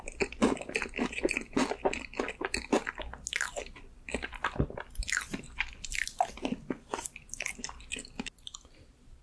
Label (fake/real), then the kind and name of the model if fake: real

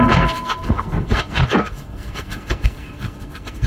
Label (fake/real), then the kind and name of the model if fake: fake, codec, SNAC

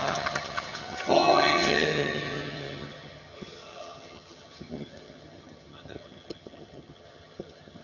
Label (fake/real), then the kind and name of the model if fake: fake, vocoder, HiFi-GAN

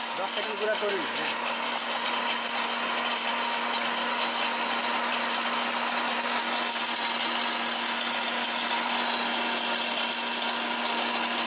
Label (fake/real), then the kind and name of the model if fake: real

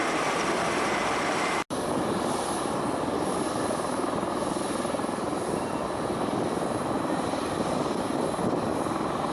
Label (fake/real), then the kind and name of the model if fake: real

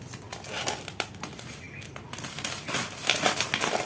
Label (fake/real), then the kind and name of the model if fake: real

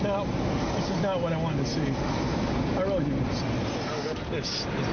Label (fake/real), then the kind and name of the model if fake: real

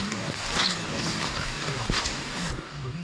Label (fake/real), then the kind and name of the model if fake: fake, codec, DAC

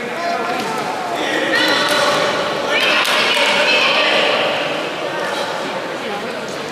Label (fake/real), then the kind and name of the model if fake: real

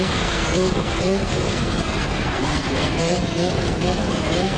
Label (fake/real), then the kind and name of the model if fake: fake, codec, SNAC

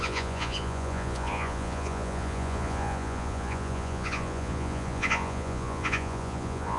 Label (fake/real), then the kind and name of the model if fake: fake, vocoder, Vocos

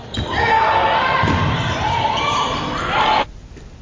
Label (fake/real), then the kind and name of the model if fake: real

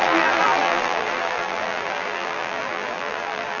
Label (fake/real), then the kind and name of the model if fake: fake, vocoder, BigVGAN v2